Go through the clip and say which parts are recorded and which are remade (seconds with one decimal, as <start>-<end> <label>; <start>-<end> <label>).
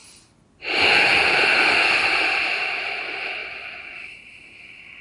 0.0-5.0 recorded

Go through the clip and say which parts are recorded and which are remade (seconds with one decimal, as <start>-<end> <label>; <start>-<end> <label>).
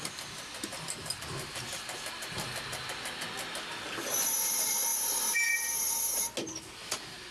0.0-7.3 recorded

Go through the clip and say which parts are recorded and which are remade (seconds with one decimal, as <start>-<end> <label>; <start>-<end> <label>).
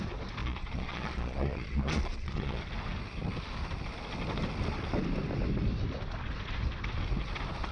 0.0-0.4 recorded; 0.4-2.6 remade; 2.6-7.7 recorded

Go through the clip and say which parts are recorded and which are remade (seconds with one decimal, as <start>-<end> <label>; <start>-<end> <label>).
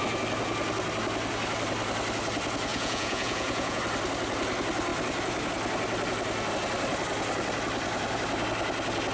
0.0-2.7 recorded; 2.7-3.8 remade; 3.8-9.1 recorded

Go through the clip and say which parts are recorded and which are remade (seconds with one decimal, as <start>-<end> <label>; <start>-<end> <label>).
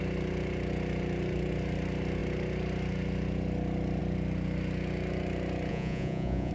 0.0-5.7 recorded; 5.7-6.5 remade